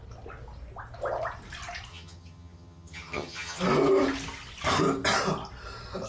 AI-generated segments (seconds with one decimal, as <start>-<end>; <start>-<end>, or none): 1.9-3.6